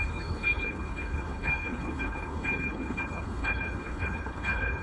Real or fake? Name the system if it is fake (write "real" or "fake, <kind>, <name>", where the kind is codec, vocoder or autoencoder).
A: fake, codec, HILCodec